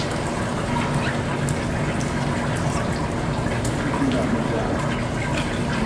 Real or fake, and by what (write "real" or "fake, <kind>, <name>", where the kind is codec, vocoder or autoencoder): real